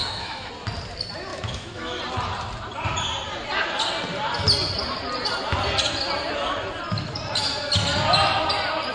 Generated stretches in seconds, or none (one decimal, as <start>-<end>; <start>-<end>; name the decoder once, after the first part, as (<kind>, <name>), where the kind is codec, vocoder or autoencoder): 0.0-0.5 (autoencoder, DAC-VAE); 1.3-2.0